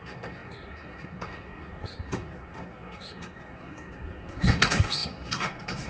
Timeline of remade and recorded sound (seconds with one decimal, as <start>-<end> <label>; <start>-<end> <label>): 0.0-5.9 remade